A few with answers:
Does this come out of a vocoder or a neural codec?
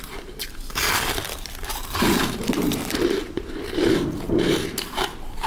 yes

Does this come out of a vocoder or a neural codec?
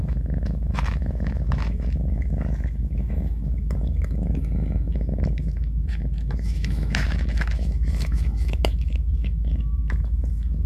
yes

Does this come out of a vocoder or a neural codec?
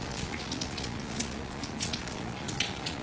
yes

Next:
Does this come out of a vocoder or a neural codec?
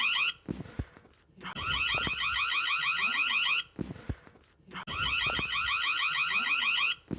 no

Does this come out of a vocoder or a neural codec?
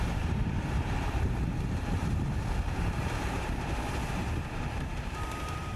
yes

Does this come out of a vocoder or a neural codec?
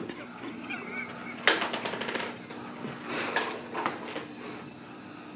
no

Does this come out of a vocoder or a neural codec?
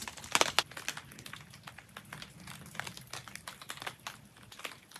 no